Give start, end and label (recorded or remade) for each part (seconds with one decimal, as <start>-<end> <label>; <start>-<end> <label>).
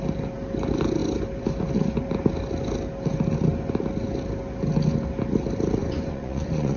0.0-5.8 recorded; 5.8-6.8 remade